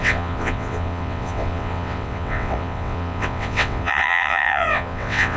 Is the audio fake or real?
fake